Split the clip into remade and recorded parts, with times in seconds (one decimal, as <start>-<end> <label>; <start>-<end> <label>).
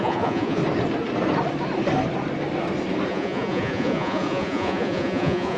0.0-0.6 remade; 0.6-3.1 recorded; 3.1-5.6 remade